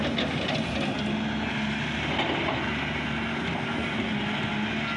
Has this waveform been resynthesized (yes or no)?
no